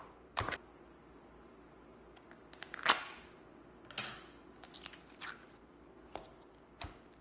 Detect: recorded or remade recorded